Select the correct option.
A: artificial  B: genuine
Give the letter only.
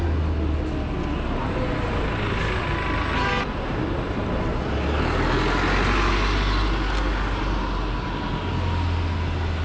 B